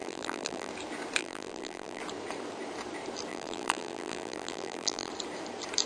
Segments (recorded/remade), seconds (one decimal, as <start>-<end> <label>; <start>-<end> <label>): 0.0-0.7 remade; 0.7-1.2 recorded; 1.2-2.0 remade; 2.0-3.3 recorded; 3.3-5.1 remade; 5.1-5.9 recorded